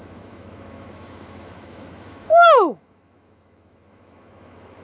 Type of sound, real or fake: fake